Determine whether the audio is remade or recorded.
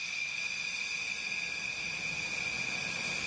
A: recorded